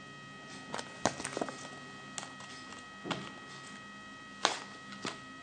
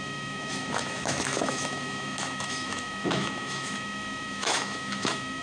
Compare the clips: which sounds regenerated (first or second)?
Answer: second